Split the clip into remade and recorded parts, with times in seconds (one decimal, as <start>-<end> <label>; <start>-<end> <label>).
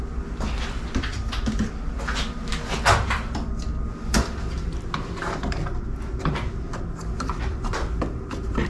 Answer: 0.0-8.7 recorded